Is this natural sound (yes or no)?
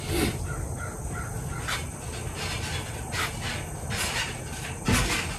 yes